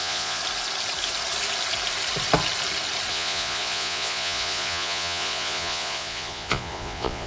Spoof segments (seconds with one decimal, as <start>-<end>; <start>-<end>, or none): 0.0-0.4; 3.1-7.3